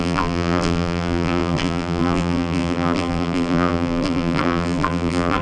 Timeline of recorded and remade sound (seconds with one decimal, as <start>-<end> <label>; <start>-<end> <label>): 0.0-5.4 remade